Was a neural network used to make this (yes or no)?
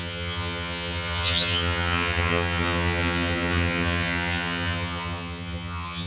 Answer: yes